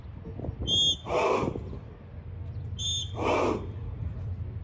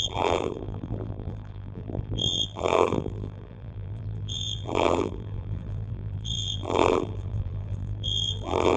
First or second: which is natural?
first